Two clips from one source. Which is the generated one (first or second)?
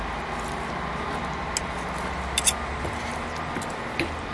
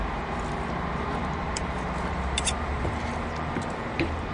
second